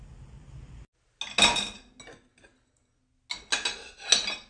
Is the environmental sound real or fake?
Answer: real